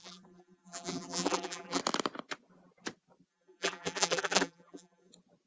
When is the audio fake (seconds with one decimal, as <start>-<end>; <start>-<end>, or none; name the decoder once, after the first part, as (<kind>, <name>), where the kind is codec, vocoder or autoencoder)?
0.0-1.8 (vocoder, BigVGAN v2); 3.3-5.1